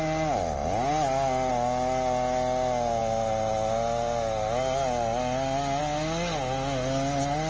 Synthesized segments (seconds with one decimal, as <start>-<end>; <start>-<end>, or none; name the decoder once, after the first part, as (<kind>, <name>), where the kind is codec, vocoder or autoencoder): none